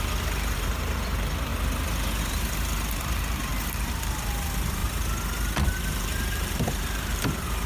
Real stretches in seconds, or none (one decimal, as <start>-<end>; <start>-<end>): 1.5-2.2; 4.8-5.9